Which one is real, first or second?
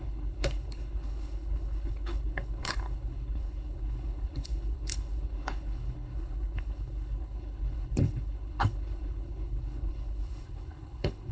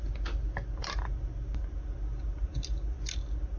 second